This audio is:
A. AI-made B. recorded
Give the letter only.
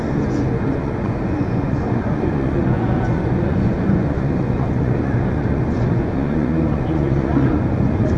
A